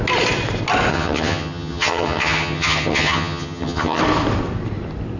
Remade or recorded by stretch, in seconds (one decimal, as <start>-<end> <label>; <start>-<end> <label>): 0.0-0.9 recorded; 0.9-4.0 remade; 4.0-5.2 recorded